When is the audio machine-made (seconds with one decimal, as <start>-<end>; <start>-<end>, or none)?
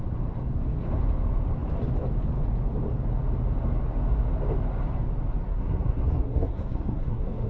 5.4-7.5